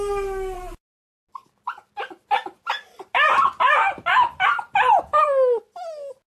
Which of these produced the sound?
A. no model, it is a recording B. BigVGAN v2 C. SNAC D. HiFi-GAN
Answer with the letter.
A